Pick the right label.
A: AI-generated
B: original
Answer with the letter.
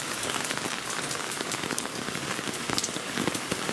A